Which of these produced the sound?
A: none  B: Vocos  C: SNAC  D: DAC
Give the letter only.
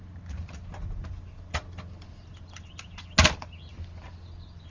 A